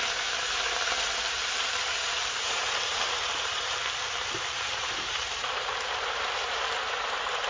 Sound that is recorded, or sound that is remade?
remade